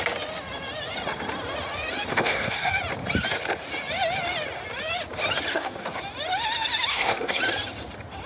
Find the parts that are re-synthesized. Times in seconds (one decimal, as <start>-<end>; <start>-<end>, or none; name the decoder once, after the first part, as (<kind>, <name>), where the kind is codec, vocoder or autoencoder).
2.1-2.7 (codec, SNAC); 5.5-6.0; 6.9-7.4